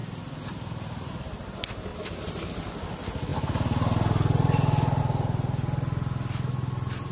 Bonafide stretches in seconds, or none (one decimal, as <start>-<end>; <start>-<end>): 1.1-1.9; 2.5-7.1